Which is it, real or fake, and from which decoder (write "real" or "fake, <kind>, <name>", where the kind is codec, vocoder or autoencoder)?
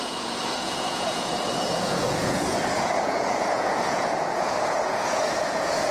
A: fake, vocoder, Vocos